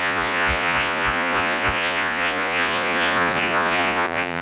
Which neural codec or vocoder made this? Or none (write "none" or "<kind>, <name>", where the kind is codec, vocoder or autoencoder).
vocoder, Vocos